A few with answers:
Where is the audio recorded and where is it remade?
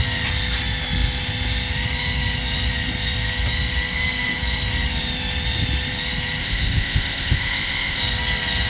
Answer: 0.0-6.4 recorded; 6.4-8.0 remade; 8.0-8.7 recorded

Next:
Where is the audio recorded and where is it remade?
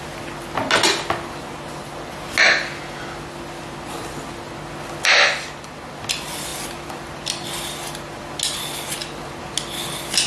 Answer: 0.0-10.3 recorded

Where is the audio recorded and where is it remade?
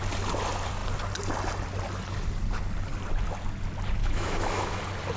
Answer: 0.0-4.0 recorded; 4.0-4.8 remade; 4.8-5.2 recorded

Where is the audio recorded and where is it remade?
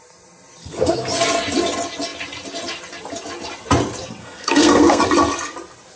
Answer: 0.0-0.6 recorded; 0.6-1.2 remade; 1.2-4.2 recorded; 4.2-5.0 remade; 5.0-6.0 recorded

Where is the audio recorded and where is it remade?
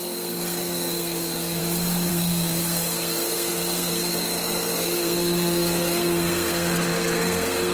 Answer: 0.0-1.6 remade; 1.6-2.1 recorded; 2.1-7.7 remade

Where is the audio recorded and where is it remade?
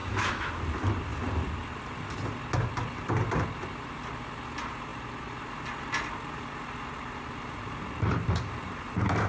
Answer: 0.0-0.5 remade; 0.5-9.3 recorded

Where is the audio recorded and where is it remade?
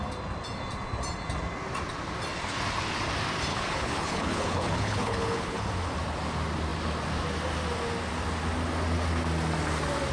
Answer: 0.0-3.5 recorded; 3.5-5.7 remade; 5.7-10.1 recorded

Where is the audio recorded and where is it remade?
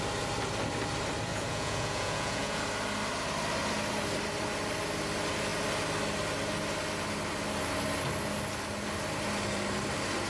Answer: 0.0-1.3 recorded; 1.3-2.6 remade; 2.6-10.3 recorded